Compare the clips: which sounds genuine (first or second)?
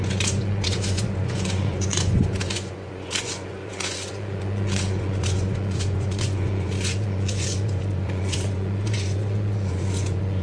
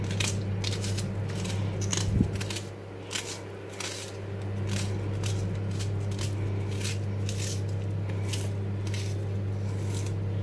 second